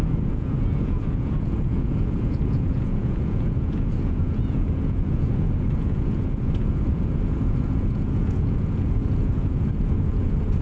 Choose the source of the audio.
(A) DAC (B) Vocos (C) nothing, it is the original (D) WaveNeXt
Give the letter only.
B